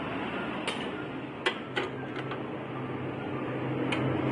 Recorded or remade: recorded